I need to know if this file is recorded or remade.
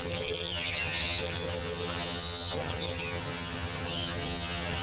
remade